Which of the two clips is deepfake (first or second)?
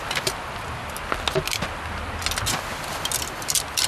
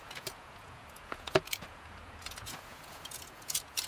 second